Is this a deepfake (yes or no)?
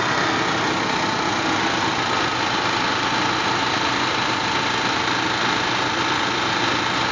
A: no